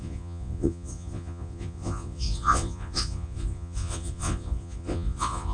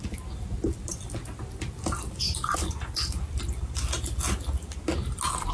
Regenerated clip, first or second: first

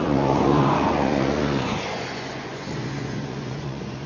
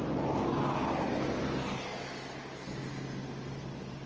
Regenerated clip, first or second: first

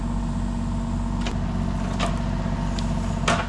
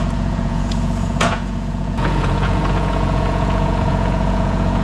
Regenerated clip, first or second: second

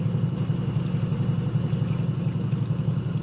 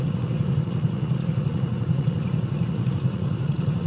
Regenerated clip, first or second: second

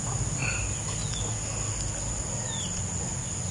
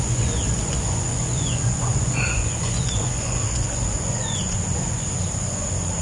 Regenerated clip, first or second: second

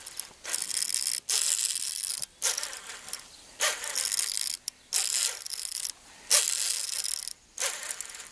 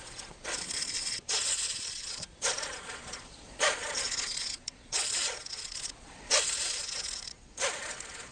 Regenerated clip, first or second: second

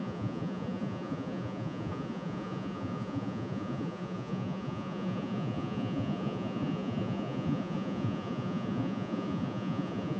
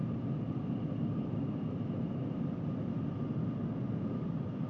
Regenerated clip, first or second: first